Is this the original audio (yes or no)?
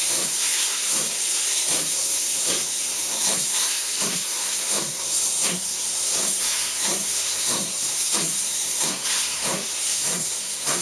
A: no